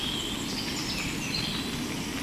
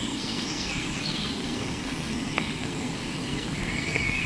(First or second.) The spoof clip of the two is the second